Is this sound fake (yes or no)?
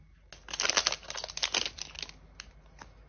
no